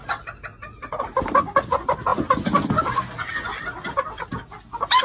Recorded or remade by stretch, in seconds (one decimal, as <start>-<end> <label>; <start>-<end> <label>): 0.0-5.0 recorded